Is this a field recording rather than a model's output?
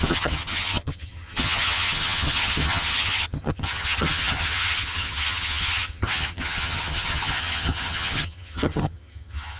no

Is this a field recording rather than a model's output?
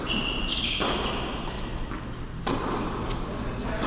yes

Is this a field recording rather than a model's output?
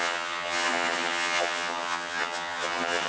no